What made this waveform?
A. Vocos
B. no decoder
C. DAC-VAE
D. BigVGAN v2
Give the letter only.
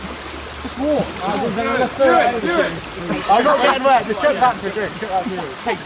B